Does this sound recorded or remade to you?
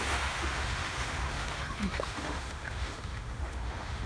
remade